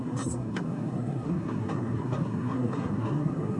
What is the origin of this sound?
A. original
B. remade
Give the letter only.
B